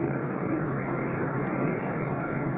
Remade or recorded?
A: remade